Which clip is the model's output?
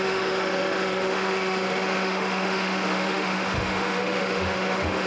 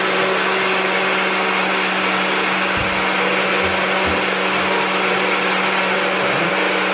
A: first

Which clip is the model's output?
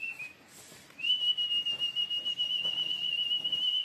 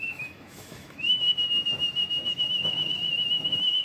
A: second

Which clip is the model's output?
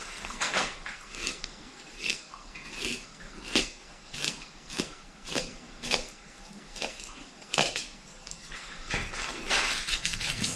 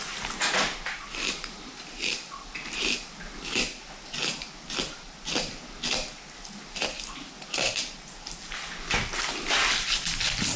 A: first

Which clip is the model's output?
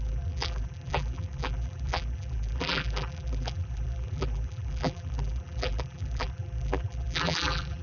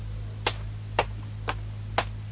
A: first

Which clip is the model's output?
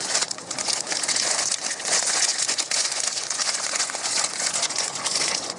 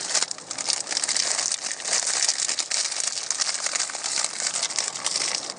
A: first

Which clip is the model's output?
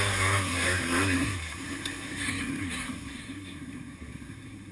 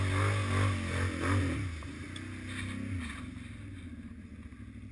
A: first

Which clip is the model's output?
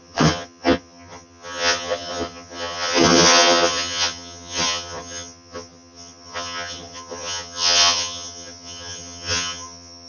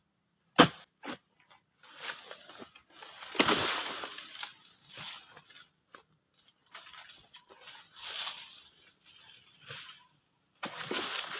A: first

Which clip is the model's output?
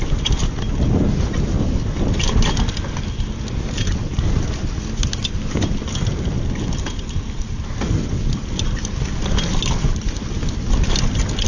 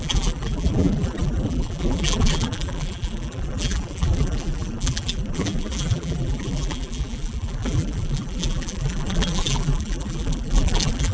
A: second